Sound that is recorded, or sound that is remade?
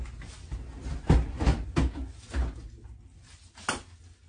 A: recorded